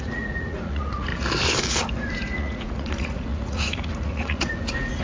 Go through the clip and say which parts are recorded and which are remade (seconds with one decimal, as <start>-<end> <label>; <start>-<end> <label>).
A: 0.0-1.1 remade; 1.1-2.1 recorded; 2.1-5.0 remade